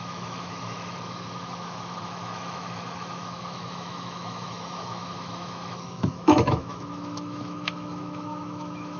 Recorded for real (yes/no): no